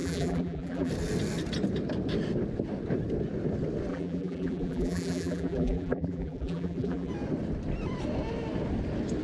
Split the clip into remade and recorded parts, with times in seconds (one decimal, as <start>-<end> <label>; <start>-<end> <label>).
0.0-0.9 remade; 0.9-3.9 recorded; 3.9-7.1 remade; 7.1-9.2 recorded